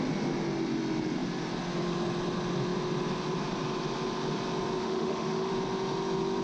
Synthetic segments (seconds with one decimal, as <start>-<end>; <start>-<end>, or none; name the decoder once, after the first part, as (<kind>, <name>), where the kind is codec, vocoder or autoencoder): 4.8-5.5 (autoencoder, DAC-VAE)

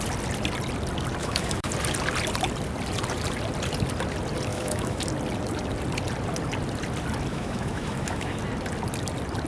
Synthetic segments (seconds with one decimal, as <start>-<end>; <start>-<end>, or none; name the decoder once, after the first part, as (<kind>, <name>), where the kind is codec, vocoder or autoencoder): 1.2-1.7 (autoencoder, DAC-VAE); 4.5-5.0; 7.3-8.4

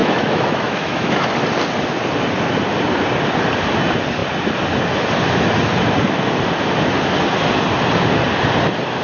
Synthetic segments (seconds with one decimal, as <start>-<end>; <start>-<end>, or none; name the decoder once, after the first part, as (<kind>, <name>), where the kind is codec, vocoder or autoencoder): 0.0-1.3 (autoencoder, DAC-VAE)

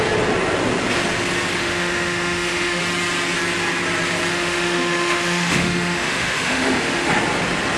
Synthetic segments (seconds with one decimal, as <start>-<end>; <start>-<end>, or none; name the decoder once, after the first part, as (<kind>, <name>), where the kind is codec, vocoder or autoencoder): 1.6-2.8 (autoencoder, DAC-VAE); 4.3-7.1

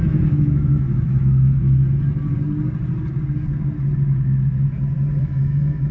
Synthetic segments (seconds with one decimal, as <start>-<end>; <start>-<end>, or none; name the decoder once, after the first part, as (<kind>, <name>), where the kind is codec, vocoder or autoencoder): 0.0-1.8 (autoencoder, DAC-VAE); 5.2-5.9

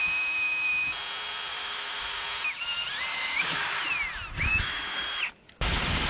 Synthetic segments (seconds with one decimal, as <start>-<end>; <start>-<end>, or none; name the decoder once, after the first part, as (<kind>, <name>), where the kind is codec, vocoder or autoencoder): 1.5-2.2 (autoencoder, DAC-VAE); 3.1-3.8; 4.5-5.0